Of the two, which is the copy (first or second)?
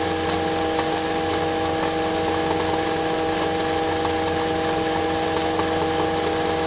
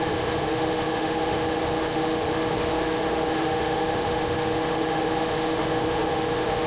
second